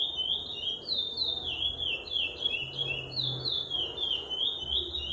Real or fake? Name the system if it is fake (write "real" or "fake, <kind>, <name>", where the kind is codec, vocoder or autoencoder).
real